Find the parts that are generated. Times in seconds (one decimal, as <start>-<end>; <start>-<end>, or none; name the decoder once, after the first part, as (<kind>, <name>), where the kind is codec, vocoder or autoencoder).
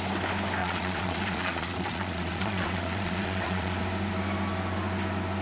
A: 0.6-3.8 (vocoder, Vocos)